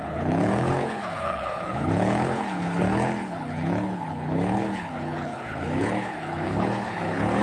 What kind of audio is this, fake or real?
fake